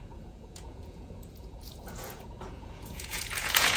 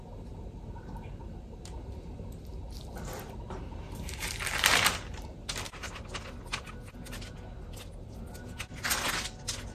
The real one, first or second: second